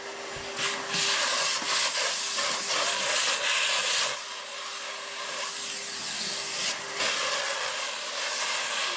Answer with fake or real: real